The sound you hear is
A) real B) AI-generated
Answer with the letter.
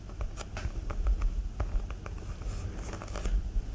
A